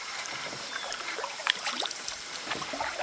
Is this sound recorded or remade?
remade